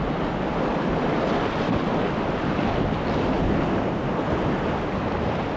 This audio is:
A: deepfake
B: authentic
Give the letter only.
B